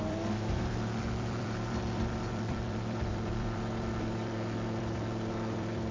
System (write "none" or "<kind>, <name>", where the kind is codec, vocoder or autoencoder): vocoder, BigVGAN v2